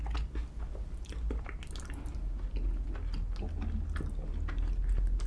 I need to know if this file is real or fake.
real